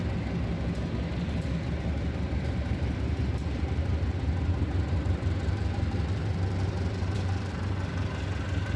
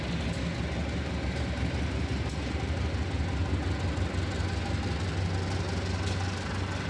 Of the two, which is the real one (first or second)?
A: second